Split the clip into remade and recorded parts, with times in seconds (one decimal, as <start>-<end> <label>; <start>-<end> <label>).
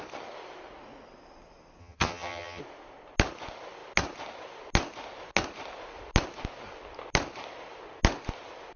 0.0-1.8 recorded; 1.8-2.6 remade; 2.6-8.8 recorded